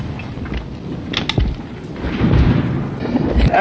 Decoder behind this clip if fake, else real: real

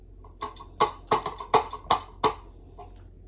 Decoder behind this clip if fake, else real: real